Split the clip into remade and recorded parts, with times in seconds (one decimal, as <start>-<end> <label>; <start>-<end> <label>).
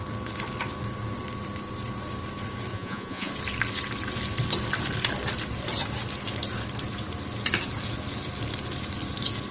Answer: 0.0-2.7 recorded; 2.7-3.3 remade; 3.3-9.5 recorded